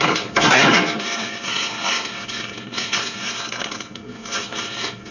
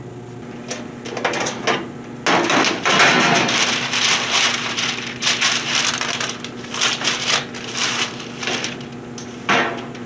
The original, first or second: second